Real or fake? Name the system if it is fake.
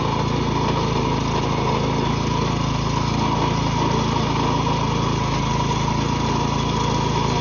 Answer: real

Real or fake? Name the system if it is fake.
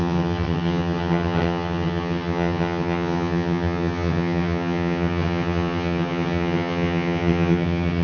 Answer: fake, vocoder, HiFi-GAN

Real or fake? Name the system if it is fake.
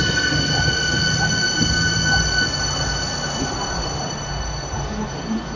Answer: real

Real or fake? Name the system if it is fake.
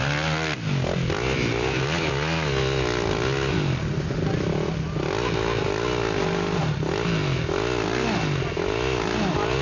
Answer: real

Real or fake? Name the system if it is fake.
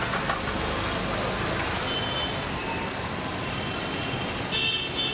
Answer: real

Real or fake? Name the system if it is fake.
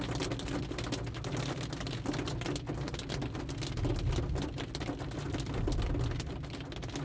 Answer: real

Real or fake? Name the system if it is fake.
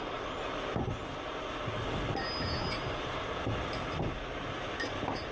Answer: real